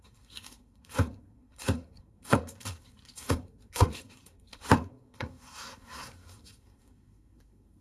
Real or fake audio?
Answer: fake